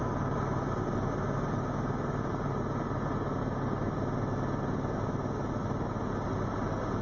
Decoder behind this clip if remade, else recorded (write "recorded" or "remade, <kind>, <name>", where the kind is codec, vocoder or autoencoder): recorded